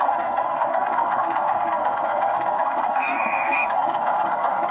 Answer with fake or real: fake